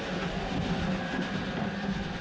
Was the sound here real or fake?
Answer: real